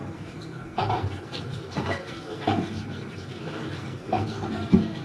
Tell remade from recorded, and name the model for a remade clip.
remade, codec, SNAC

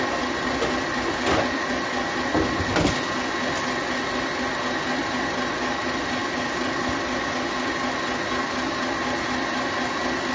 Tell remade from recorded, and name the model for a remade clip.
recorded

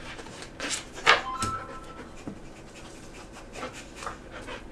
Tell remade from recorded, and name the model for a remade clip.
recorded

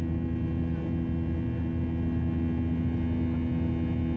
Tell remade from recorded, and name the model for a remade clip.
recorded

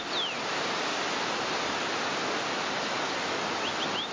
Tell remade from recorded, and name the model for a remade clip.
recorded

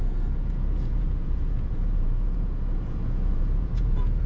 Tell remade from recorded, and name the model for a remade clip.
remade, vocoder, Vocos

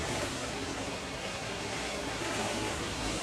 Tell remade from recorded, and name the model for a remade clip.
remade, codec, SNAC